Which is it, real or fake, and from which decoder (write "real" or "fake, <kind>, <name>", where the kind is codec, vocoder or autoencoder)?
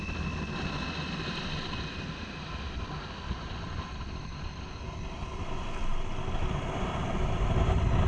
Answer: real